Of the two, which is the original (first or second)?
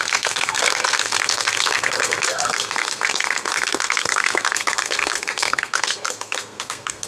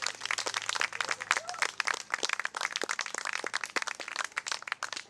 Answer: second